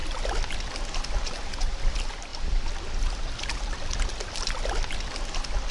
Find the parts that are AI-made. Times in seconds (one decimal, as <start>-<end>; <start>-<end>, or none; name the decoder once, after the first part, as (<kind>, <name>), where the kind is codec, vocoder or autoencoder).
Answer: none